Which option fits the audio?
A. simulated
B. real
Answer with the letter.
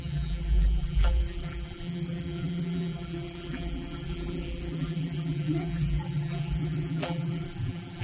A